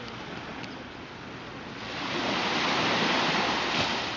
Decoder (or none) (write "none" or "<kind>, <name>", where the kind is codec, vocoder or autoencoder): none